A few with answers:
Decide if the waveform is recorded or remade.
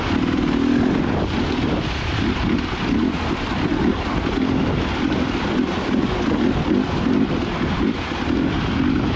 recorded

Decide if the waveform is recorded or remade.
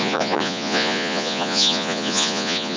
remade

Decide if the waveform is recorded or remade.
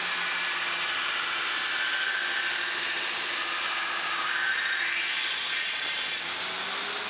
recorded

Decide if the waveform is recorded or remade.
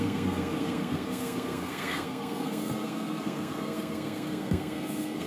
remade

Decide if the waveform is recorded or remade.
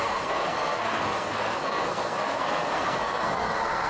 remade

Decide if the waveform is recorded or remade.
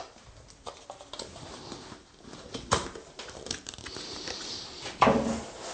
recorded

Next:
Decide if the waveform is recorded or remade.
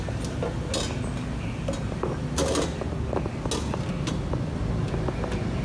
recorded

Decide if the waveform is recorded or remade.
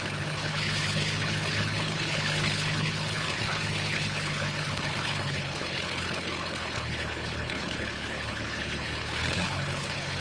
remade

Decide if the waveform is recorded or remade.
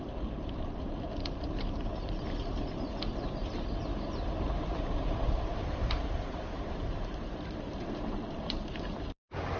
remade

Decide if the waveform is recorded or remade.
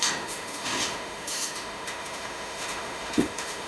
remade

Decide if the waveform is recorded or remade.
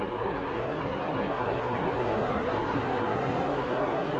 remade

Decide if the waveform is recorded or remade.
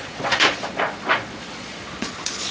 remade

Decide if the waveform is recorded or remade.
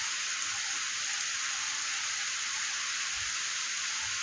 recorded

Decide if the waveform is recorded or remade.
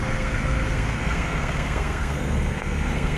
remade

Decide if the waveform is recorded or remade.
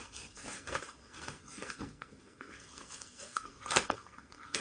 remade